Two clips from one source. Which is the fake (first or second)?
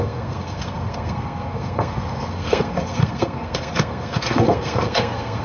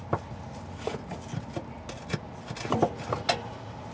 first